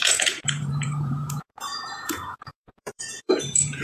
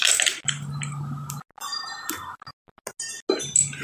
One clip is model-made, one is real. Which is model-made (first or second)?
first